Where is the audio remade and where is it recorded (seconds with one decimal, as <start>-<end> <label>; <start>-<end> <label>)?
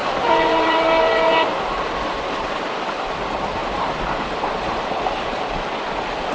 0.0-2.1 remade; 2.1-3.6 recorded; 3.6-5.4 remade; 5.4-6.3 recorded